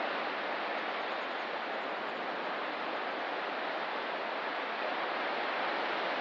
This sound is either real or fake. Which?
real